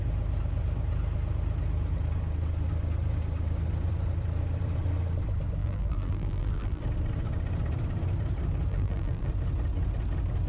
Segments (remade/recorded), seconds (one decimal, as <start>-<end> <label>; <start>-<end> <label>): 0.0-5.6 recorded; 5.6-6.8 remade; 6.8-8.7 recorded; 8.7-9.3 remade; 9.3-10.5 recorded